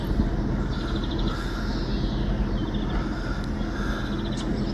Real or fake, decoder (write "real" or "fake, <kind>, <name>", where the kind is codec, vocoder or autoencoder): real